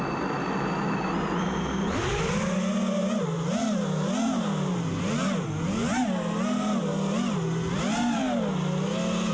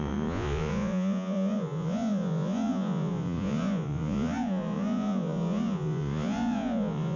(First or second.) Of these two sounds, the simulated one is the second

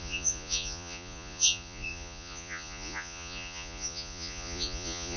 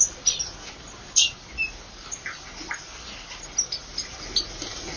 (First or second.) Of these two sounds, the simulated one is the first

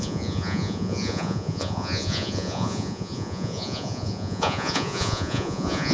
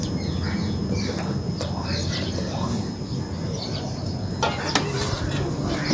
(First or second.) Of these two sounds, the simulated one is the first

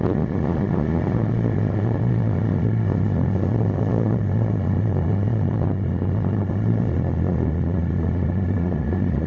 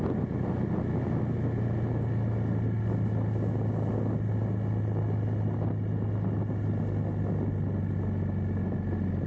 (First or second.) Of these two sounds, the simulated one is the first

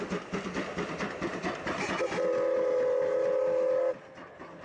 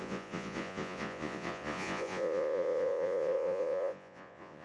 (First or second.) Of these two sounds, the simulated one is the second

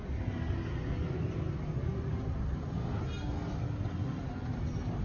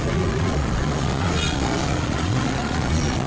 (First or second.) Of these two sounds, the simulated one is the second